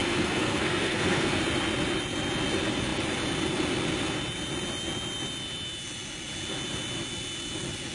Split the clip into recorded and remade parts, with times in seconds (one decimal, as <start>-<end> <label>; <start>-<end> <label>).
0.0-1.4 remade; 1.4-7.9 recorded

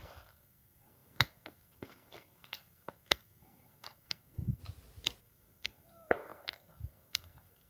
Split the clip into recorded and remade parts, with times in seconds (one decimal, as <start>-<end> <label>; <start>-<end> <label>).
0.0-4.6 remade; 4.6-5.2 recorded; 5.2-7.7 remade